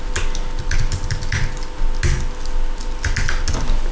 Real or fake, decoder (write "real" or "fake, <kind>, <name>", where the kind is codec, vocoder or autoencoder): real